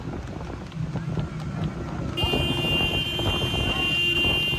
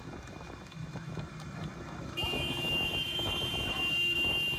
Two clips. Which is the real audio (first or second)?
first